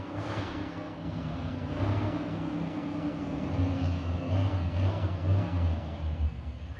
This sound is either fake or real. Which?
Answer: fake